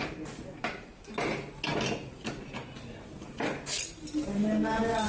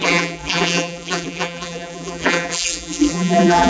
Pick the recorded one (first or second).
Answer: first